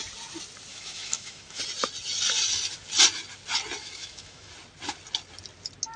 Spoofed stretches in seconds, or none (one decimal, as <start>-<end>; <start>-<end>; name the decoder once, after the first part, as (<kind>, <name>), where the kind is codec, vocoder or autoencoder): 0.7-1.6 (autoencoder, DAC-VAE); 3.8-4.5